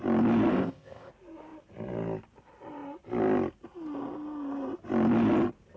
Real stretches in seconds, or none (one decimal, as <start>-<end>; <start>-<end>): 0.0-0.5; 1.1-5.8